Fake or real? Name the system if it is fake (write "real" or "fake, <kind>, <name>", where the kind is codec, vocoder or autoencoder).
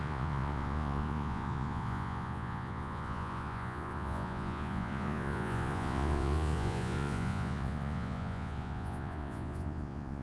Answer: fake, vocoder, Vocos